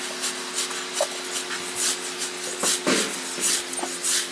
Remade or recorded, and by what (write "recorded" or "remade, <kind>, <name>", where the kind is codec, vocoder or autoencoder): recorded